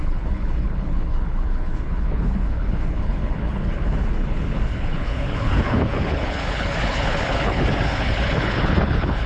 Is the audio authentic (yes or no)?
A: no